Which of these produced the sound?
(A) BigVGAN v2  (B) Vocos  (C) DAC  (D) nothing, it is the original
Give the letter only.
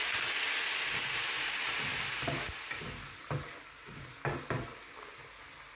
D